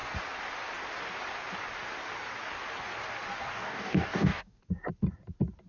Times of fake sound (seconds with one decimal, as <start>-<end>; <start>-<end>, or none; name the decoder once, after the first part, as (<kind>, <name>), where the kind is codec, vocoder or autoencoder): 3.4-4.6 (codec, DAC)